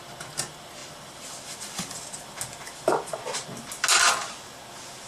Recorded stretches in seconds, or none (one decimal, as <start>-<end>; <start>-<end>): 0.0-5.1